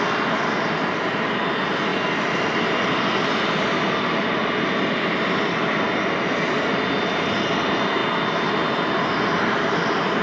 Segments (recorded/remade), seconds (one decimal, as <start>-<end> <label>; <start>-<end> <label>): 0.0-10.2 recorded